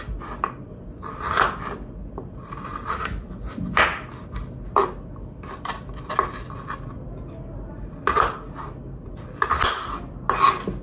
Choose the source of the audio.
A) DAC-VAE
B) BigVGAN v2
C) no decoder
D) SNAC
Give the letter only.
C